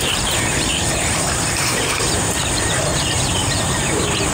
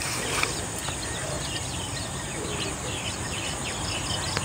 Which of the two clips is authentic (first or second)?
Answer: second